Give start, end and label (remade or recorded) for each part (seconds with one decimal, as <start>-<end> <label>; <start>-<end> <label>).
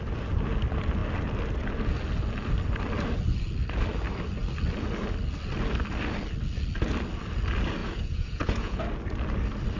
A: 0.0-7.8 recorded; 7.8-8.8 remade; 8.8-9.8 recorded